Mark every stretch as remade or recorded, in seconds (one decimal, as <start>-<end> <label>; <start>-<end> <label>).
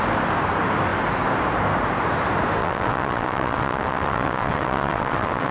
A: 0.0-2.6 recorded; 2.6-5.5 remade